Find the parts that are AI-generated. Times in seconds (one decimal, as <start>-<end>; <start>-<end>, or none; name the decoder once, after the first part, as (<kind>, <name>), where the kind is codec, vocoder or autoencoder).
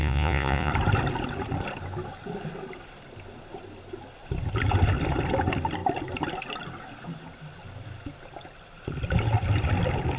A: 0.0-0.7 (vocoder, Vocos)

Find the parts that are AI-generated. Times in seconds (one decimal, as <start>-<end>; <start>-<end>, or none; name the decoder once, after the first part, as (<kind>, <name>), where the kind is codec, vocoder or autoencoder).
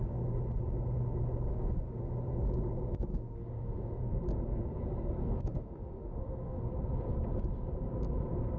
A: 1.5-2.0 (autoencoder, DAC-VAE); 3.1-4.2; 5.2-6.7